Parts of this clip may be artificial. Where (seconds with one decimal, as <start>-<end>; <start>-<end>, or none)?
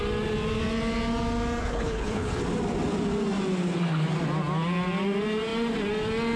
1.6-2.4